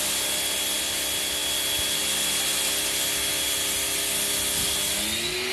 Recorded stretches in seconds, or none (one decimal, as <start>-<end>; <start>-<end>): 0.0-5.5